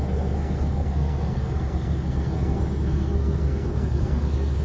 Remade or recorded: remade